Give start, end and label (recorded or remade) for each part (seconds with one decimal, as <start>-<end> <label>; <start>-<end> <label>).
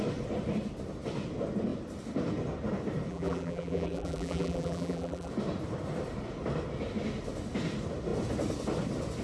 0.0-3.1 recorded; 3.1-5.3 remade; 5.3-9.2 recorded